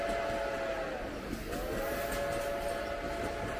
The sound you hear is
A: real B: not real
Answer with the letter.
A